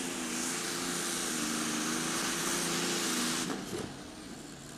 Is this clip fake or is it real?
real